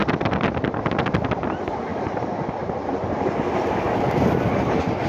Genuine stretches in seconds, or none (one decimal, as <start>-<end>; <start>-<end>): 0.0-1.9; 4.3-5.1